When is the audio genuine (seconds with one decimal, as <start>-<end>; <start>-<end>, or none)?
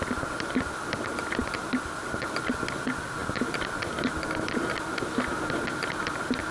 0.0-6.5